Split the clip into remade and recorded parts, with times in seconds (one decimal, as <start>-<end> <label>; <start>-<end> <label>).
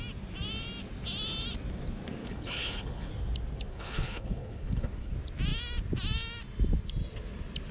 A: 0.0-2.2 recorded; 2.2-3.1 remade; 3.1-3.7 recorded; 3.7-5.1 remade; 5.1-7.7 recorded